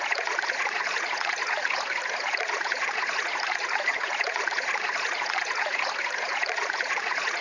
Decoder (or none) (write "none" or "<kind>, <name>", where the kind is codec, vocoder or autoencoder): vocoder, Vocos